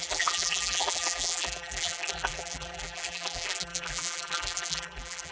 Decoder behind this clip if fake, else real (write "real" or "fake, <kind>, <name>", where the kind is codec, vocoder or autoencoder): fake, vocoder, BigVGAN v2